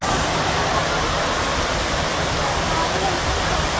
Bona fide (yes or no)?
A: yes